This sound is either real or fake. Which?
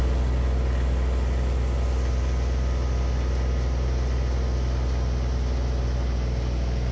real